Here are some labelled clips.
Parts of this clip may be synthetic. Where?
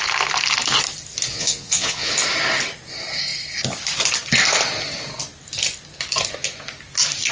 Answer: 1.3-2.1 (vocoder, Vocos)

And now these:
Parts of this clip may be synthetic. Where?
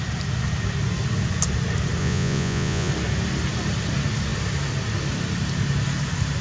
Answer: 2.0-2.9 (vocoder, Vocos)